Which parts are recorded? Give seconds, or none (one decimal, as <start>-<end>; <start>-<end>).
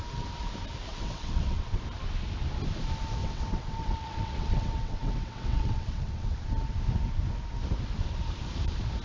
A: 0.0-0.9; 1.8-3.2; 6.4-9.0